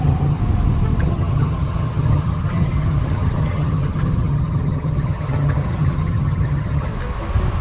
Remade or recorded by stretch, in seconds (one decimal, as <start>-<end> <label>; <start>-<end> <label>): 0.0-0.4 remade; 0.4-1.0 recorded; 1.0-6.9 remade; 6.9-7.6 recorded